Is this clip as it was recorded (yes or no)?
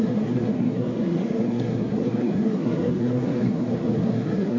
no